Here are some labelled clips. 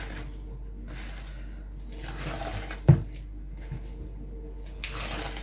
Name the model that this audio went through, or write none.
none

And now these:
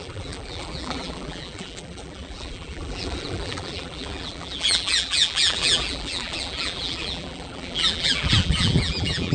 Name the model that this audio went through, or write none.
vocoder, BigVGAN v2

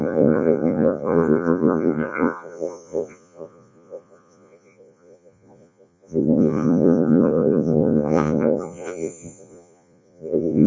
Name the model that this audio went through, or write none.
vocoder, Vocos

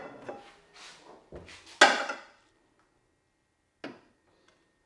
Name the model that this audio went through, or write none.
none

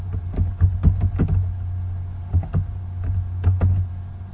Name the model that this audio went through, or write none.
none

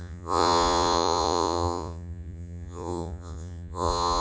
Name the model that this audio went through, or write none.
vocoder, Vocos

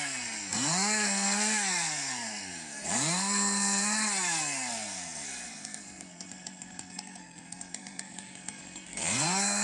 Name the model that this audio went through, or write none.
codec, SNAC